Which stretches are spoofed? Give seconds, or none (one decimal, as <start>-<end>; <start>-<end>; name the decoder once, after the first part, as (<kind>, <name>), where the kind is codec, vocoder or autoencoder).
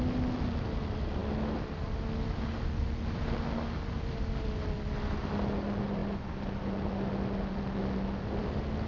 none